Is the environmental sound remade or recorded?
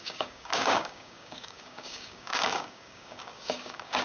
remade